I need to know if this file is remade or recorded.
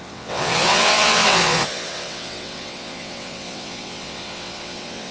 remade